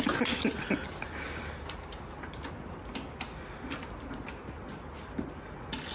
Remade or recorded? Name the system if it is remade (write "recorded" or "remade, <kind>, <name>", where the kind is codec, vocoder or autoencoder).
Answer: recorded